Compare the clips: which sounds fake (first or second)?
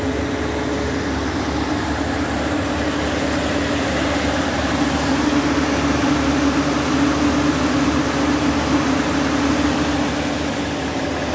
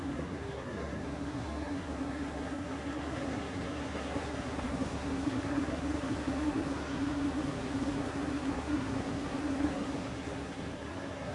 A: second